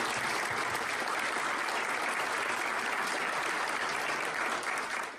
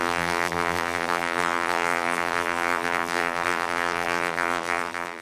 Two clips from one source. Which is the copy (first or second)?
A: second